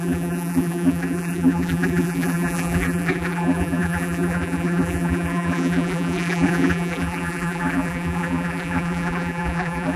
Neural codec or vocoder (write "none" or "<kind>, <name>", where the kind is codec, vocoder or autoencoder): vocoder, BigVGAN v2